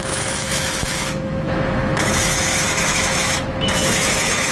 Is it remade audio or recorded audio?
remade